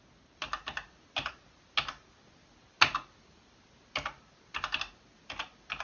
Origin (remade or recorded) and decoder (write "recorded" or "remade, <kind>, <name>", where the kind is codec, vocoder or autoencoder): recorded